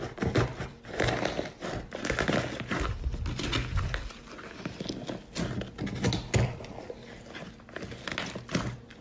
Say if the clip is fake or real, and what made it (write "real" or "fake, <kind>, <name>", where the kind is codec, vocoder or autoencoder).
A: real